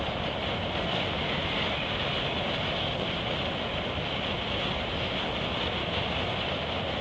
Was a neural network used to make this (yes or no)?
no